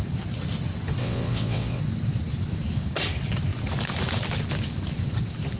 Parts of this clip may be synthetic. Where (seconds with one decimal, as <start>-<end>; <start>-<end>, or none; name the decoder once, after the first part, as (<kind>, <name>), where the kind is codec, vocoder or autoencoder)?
1.0-1.8 (vocoder, WaveNeXt)